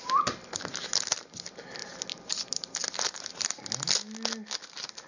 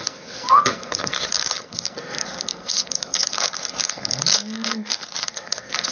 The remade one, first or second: second